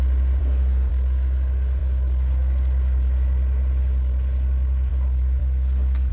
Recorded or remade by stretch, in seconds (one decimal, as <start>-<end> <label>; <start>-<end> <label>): 0.0-0.4 recorded; 0.4-0.9 remade; 0.9-5.4 recorded; 5.4-6.1 remade